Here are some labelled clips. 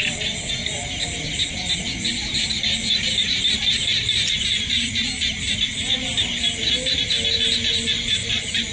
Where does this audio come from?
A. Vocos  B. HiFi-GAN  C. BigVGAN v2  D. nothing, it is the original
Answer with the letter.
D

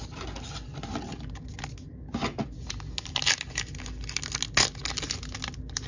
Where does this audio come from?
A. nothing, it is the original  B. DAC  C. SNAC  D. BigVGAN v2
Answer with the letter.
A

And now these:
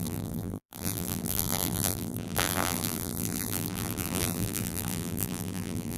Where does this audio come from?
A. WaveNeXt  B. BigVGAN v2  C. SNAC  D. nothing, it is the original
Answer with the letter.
B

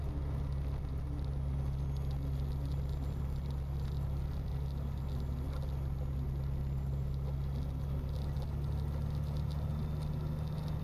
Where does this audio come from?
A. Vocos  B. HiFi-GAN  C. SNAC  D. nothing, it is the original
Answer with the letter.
D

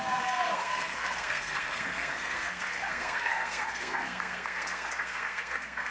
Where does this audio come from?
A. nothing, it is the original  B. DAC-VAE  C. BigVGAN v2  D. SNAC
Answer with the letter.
D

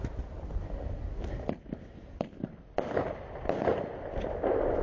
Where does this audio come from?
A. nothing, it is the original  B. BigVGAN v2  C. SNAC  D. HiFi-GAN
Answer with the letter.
A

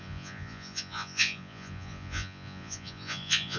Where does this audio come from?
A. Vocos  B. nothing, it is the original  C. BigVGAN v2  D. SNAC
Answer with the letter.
A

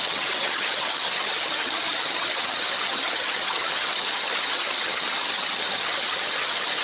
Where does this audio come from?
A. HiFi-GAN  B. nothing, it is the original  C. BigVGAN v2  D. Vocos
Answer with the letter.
A